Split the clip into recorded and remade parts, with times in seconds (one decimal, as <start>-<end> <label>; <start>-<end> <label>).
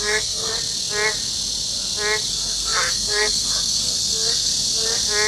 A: 0.0-0.5 remade; 0.5-2.3 recorded; 2.3-4.5 remade; 4.5-5.3 recorded